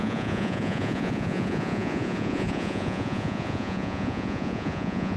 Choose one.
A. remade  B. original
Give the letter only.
A